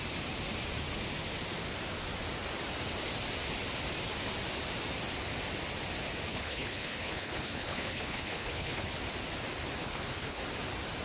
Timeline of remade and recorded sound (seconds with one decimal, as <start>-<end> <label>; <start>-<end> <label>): 0.0-6.3 recorded; 6.3-9.0 remade; 9.0-9.8 recorded; 9.8-10.4 remade; 10.4-11.0 recorded